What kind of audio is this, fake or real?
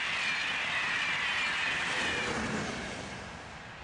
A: real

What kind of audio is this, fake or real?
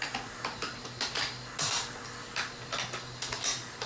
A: real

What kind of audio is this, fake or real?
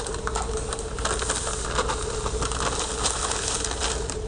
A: real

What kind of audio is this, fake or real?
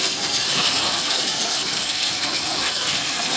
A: fake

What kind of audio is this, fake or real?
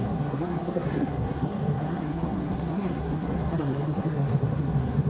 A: fake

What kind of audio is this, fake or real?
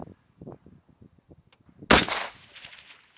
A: real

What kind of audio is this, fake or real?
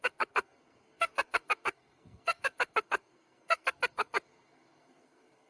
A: fake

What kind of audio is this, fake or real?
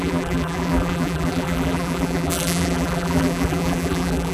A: fake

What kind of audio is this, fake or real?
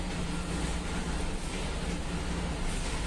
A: real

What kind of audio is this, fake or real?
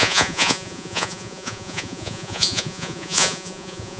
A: fake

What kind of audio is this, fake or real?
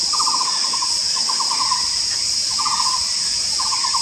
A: fake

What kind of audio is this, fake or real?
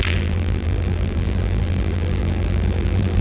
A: fake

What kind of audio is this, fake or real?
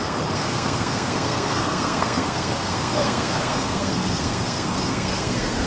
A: fake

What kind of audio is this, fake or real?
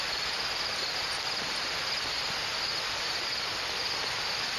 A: real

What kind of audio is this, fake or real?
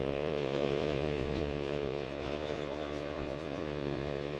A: fake